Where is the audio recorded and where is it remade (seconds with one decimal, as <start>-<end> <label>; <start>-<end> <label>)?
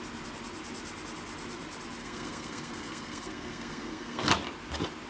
0.0-2.0 recorded; 2.0-4.3 remade; 4.3-5.1 recorded